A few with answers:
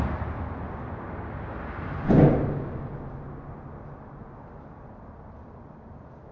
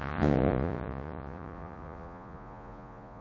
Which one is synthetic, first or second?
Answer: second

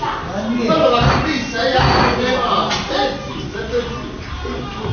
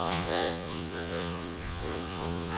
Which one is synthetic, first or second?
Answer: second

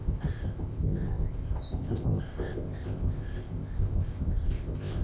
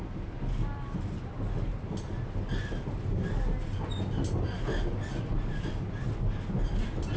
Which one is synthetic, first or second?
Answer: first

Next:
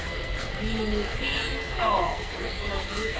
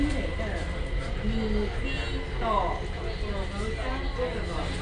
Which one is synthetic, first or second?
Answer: first